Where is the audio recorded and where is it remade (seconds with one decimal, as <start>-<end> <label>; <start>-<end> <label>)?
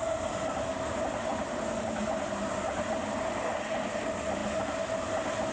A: 0.0-5.5 recorded